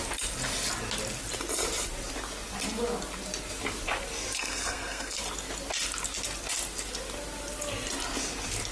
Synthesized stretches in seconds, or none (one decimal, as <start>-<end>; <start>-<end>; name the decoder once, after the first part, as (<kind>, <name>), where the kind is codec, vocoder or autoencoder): 4.4-5.2 (codec, SNAC)